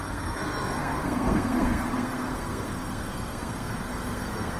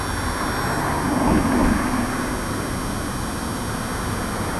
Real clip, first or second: second